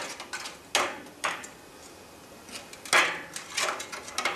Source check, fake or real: real